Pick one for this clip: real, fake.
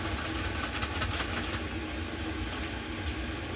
real